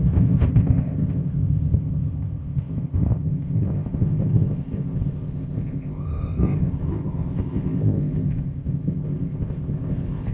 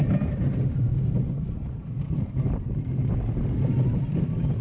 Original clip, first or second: second